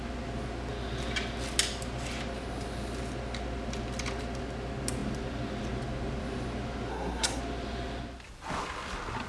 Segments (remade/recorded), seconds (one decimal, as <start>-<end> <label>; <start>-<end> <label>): 0.0-6.9 recorded; 6.9-7.4 remade; 7.4-9.3 recorded